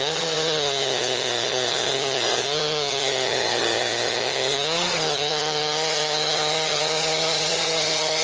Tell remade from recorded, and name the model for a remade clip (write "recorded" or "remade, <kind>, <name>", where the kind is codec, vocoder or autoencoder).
remade, vocoder, HiFi-GAN